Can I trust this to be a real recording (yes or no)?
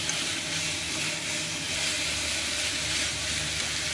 yes